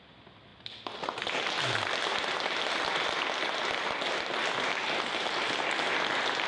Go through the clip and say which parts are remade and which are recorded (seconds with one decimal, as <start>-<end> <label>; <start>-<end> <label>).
0.0-6.5 recorded